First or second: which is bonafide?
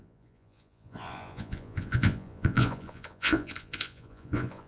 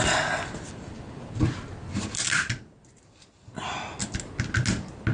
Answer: second